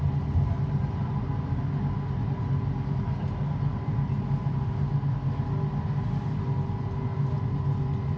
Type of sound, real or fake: real